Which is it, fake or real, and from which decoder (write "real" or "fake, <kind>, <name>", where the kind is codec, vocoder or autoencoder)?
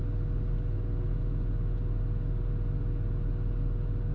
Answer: real